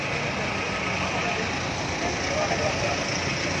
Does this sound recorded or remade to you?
recorded